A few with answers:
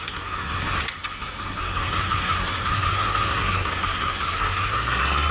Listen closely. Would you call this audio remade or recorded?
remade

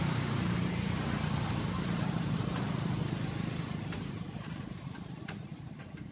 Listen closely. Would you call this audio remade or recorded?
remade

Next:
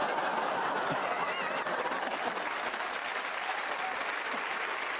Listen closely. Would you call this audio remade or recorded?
recorded